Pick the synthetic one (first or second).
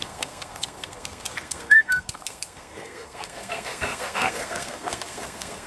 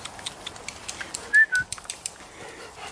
first